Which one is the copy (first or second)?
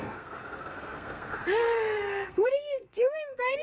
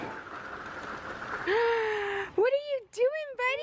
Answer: first